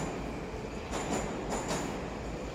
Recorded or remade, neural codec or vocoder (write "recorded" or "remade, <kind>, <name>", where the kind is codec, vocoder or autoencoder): recorded